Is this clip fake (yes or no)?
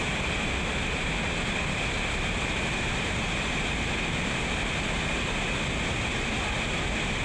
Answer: no